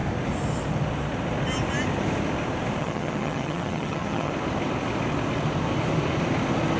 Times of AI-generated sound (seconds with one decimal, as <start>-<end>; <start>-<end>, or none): 2.8-4.3